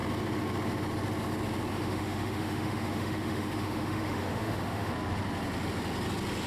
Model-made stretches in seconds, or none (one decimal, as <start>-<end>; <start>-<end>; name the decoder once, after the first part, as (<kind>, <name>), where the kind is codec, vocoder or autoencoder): 1.7-4.9 (autoencoder, DAC-VAE)